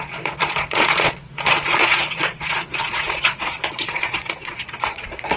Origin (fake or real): fake